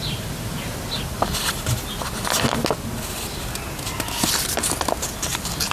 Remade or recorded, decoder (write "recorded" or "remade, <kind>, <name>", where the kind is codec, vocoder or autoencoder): recorded